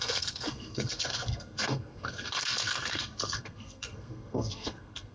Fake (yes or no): yes